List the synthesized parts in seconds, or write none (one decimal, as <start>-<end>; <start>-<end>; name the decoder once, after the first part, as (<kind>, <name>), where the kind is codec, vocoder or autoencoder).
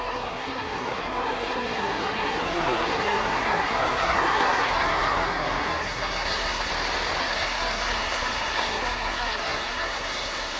0.0-6.7 (codec, SNAC); 7.2-10.6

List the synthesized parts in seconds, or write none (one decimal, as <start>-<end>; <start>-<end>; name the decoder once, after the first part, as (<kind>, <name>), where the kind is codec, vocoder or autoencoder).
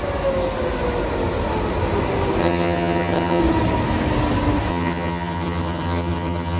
2.4-3.4 (vocoder, HiFi-GAN); 4.7-6.6